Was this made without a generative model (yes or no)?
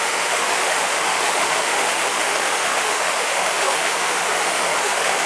no